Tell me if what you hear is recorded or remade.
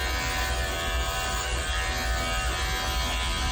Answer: recorded